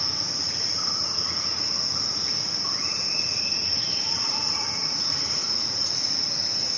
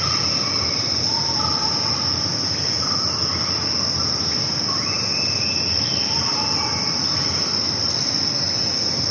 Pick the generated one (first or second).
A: first